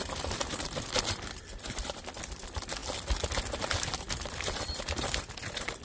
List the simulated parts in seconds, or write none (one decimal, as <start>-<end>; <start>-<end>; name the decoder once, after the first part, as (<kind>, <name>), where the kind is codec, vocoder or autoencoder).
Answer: none